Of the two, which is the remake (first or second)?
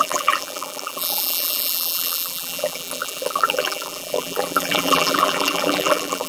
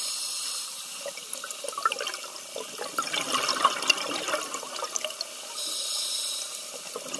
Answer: first